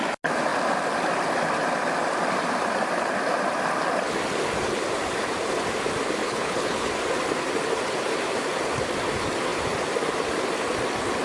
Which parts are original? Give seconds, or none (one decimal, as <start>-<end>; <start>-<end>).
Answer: 0.0-6.2; 6.9-11.2